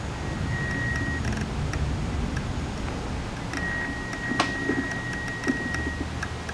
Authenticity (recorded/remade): recorded